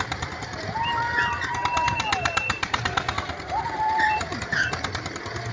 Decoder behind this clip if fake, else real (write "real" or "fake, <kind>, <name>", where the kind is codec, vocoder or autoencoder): real